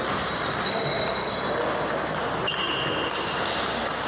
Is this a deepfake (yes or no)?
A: no